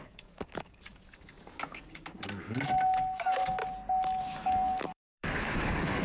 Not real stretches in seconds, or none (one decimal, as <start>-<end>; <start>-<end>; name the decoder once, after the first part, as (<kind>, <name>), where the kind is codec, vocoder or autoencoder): 0.0-3.6 (codec, DAC); 4.2-6.0